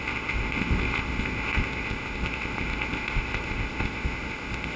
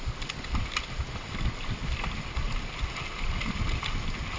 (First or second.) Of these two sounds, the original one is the second